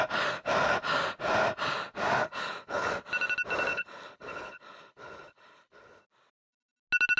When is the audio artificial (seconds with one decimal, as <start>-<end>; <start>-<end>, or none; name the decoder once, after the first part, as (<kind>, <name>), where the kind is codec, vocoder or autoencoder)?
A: 2.2-2.9 (codec, HILCodec); 3.7-6.0